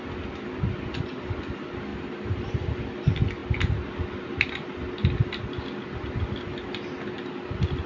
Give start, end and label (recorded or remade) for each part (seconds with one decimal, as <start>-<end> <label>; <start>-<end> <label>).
0.0-7.9 recorded

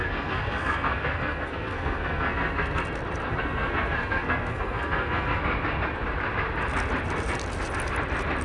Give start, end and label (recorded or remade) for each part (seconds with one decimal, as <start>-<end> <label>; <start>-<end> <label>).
0.0-2.8 remade; 2.8-3.3 recorded; 3.3-5.4 remade; 5.4-8.4 recorded